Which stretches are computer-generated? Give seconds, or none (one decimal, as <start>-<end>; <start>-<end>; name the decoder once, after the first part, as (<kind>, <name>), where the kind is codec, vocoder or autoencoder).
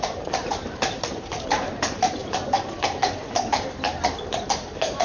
0.0-5.0 (vocoder, BigVGAN v2)